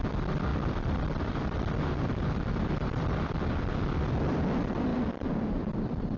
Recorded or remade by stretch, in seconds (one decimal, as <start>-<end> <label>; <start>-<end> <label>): 0.0-0.5 recorded; 0.5-4.2 remade; 4.2-4.9 recorded; 4.9-6.2 remade